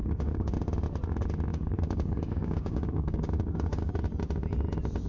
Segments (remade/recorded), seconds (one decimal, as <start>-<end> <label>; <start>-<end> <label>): 0.0-0.5 remade; 0.5-1.5 recorded; 1.5-3.9 remade; 3.9-5.1 recorded